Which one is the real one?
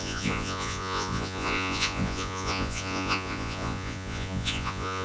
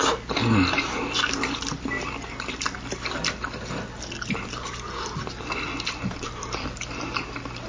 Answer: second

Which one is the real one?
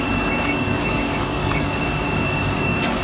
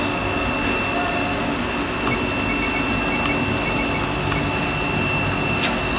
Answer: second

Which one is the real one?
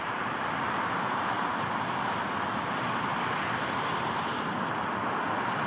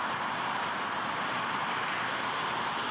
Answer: second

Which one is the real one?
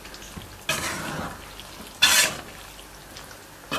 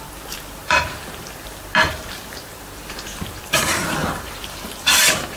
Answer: first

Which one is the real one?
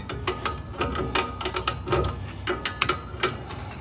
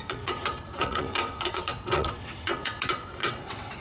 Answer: first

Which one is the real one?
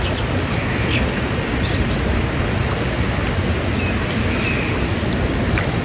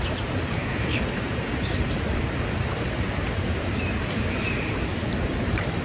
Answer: first